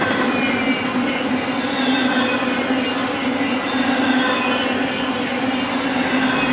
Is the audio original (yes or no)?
yes